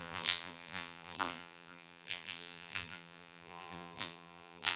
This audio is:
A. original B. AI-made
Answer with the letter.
B